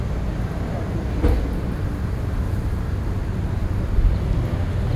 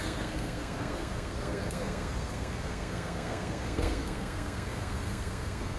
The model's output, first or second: second